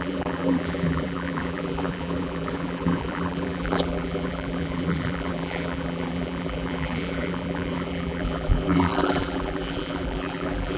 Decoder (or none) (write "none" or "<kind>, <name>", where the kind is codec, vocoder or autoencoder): vocoder, BigVGAN v2